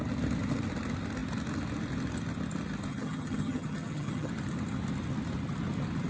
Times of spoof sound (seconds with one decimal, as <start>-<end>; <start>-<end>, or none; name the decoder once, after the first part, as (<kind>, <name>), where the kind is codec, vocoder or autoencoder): 2.9-4.3 (vocoder, HiFi-GAN)